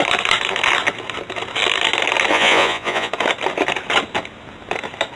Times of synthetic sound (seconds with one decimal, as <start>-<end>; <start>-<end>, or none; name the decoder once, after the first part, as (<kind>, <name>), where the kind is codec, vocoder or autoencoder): 2.3-3.1 (vocoder, Vocos)